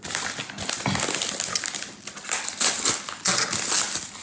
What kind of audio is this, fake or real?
real